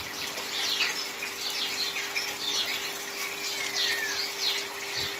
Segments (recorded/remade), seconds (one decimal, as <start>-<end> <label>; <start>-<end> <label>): 0.0-5.2 recorded

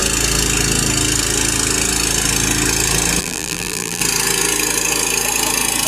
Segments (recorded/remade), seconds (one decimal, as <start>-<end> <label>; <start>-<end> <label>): 0.0-3.2 recorded; 3.2-4.0 remade; 4.0-5.9 recorded

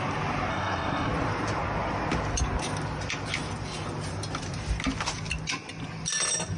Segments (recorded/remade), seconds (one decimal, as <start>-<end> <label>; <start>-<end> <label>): 0.0-0.5 recorded; 0.5-1.1 remade; 1.1-6.6 recorded

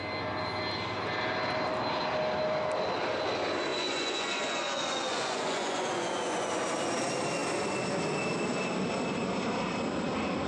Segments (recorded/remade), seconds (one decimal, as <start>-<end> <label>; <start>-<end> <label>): 0.0-3.7 recorded; 3.7-6.5 remade; 6.5-10.5 recorded

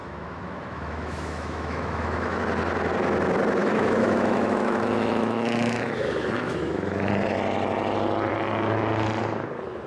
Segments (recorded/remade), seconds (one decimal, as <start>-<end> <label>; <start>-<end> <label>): 0.0-2.4 remade; 2.4-3.6 recorded; 3.6-7.1 remade; 7.1-9.9 recorded

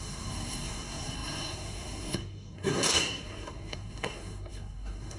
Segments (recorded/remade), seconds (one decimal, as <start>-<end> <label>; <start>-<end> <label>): 0.0-5.2 remade

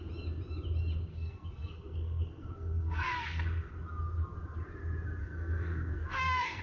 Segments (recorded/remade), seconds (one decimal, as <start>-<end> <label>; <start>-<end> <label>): 0.0-1.1 recorded; 1.1-3.7 remade; 3.7-5.2 recorded; 5.2-6.6 remade

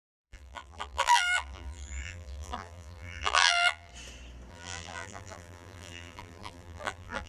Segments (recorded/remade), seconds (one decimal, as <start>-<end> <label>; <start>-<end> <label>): 0.0-3.9 remade; 3.9-4.5 recorded; 4.5-7.3 remade